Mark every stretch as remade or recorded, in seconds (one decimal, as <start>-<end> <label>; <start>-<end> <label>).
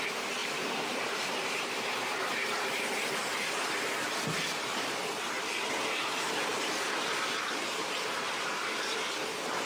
0.0-0.4 recorded; 0.4-2.7 remade; 2.7-6.5 recorded; 6.5-9.1 remade; 9.1-9.7 recorded